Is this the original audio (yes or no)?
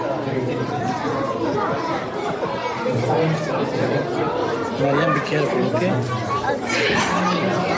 yes